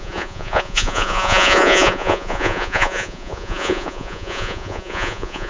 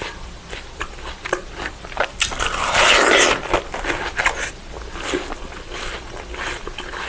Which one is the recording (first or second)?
second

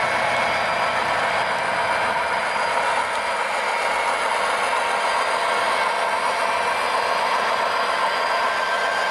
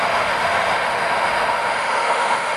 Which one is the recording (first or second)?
first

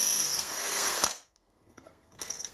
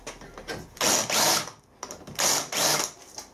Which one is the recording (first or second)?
second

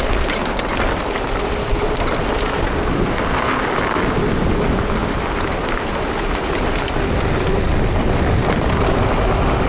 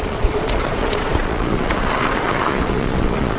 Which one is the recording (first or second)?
first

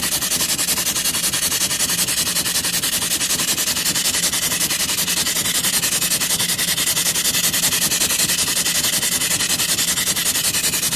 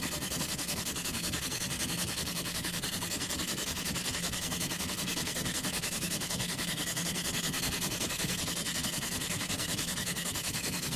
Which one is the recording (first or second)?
first